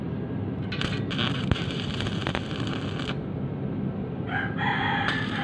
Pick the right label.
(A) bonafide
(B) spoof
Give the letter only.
A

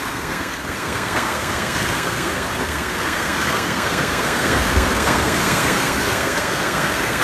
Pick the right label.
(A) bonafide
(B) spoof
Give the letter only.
B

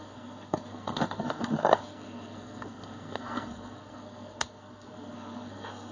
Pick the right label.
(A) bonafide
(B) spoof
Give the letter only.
B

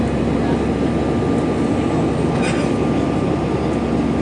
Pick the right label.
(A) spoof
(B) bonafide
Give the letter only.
B